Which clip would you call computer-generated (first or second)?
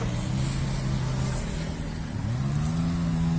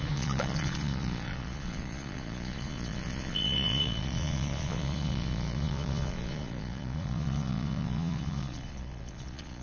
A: second